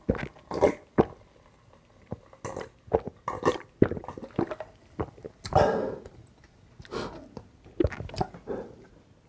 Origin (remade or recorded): recorded